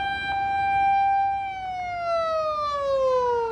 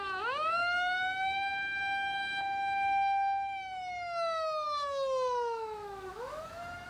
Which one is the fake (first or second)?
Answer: second